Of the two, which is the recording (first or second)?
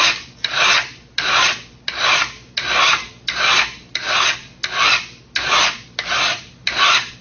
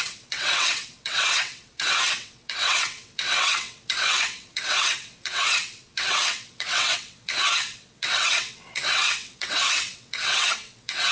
first